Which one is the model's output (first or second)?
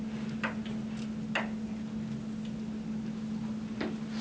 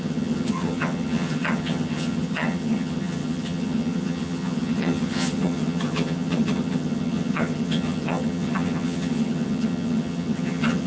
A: second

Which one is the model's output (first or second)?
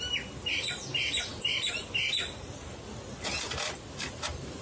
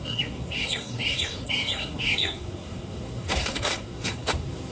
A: second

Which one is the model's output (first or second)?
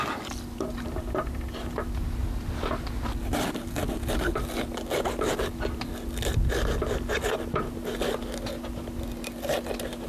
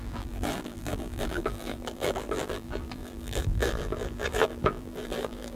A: second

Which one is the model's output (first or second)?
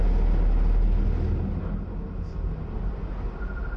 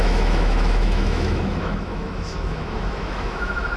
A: second